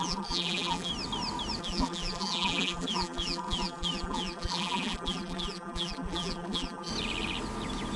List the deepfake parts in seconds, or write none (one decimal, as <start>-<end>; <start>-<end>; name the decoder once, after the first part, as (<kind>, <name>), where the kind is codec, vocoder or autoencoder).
0.0-0.9 (vocoder, BigVGAN v2); 1.6-6.9